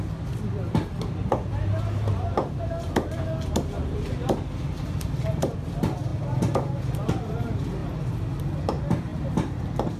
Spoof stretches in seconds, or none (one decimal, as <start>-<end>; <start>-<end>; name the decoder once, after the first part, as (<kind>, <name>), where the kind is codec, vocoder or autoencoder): 9.1-9.6 (vocoder, BigVGAN v2)